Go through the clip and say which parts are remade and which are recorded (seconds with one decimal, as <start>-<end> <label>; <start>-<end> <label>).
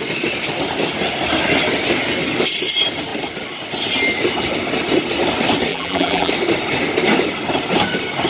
0.0-5.7 recorded; 5.7-6.3 remade; 6.3-8.3 recorded